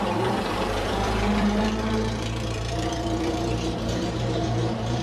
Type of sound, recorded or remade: remade